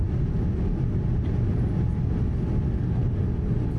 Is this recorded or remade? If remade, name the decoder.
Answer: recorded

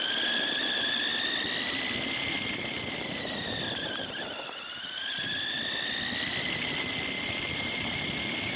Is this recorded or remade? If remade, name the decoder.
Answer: remade, vocoder, BigVGAN v2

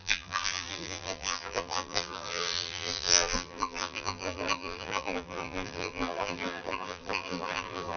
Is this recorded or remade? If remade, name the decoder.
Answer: remade, vocoder, BigVGAN v2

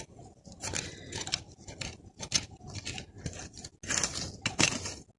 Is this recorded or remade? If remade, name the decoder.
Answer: recorded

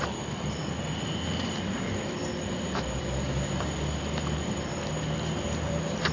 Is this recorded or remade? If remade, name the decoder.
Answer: remade, vocoder, BigVGAN v2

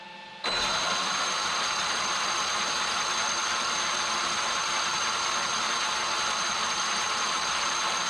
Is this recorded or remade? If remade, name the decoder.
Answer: recorded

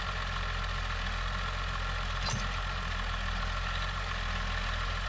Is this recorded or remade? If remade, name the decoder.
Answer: recorded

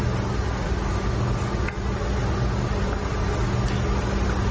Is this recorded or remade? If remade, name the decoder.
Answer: recorded